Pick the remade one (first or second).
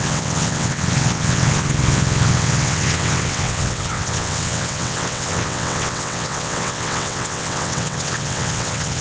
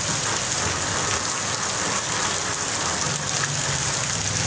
first